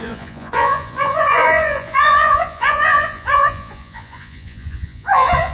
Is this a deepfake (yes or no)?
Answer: yes